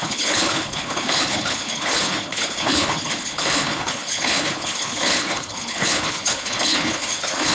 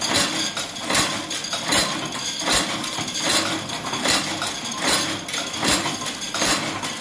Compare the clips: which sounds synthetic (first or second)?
first